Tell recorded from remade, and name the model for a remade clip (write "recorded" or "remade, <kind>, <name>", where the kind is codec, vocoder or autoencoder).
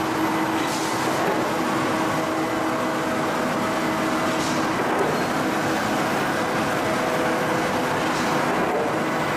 recorded